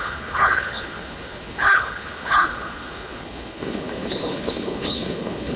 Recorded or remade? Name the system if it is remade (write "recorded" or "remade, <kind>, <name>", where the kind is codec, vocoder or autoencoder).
remade, codec, HILCodec